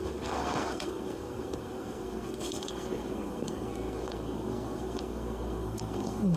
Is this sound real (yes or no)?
no